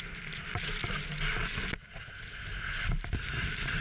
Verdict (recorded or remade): recorded